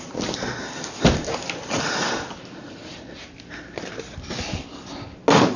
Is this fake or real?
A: real